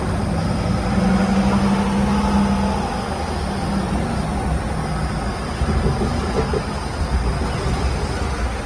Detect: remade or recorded recorded